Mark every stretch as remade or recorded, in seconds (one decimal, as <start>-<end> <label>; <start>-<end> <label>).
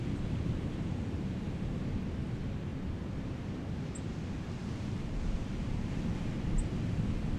0.0-7.4 recorded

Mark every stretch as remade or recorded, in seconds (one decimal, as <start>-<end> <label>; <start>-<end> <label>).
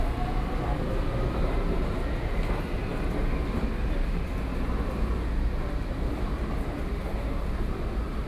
0.0-8.3 recorded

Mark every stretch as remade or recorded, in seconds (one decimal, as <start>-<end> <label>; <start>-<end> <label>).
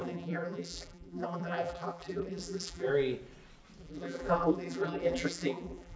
0.0-2.9 remade; 2.9-3.8 recorded; 3.8-6.0 remade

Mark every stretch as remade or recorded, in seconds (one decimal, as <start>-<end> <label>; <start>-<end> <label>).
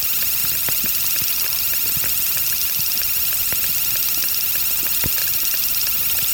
0.0-6.3 recorded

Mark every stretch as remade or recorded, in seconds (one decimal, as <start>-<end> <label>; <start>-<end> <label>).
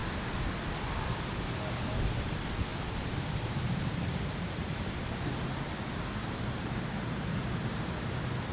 0.0-2.7 recorded; 2.7-7.8 remade; 7.8-8.5 recorded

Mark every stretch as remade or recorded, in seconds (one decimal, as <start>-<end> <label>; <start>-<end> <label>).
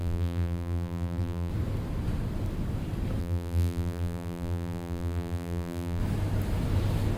0.0-1.5 remade; 1.5-3.2 recorded; 3.2-6.0 remade; 6.0-7.2 recorded